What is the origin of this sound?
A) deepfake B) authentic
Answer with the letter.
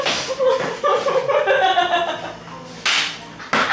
B